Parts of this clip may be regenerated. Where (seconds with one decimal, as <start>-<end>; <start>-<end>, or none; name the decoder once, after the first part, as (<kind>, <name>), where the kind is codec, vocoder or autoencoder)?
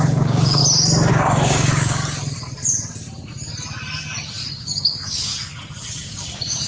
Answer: 0.0-0.6 (codec, DAC); 1.1-2.0; 4.5-5.3; 6.0-6.7